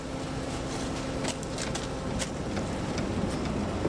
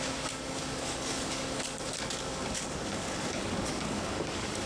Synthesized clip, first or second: second